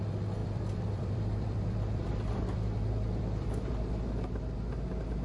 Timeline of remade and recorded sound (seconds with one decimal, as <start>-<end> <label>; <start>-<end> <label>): 0.0-0.4 recorded; 0.4-3.5 remade; 3.5-5.2 recorded